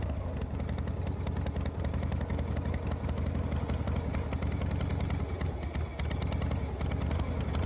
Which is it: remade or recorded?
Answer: recorded